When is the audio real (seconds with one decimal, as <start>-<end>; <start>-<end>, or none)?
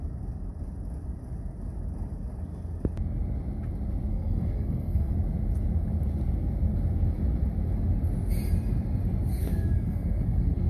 0.0-4.1; 5.1-9.3